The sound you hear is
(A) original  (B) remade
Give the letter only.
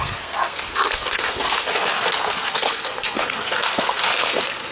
B